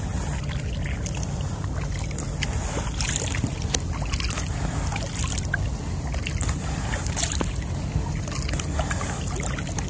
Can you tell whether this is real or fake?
real